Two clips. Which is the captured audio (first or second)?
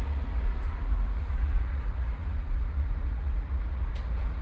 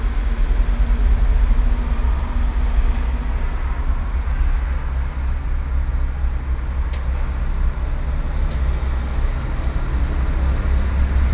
second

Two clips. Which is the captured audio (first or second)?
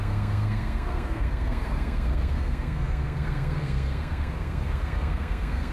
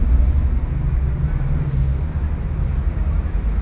second